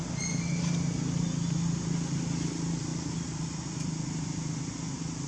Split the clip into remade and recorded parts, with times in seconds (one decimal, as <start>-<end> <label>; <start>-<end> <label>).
0.0-5.3 recorded